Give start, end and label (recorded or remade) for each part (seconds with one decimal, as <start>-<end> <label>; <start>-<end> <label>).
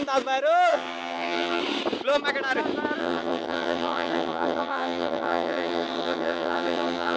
0.0-0.7 recorded; 0.7-1.6 remade; 1.6-3.0 recorded; 3.0-7.2 remade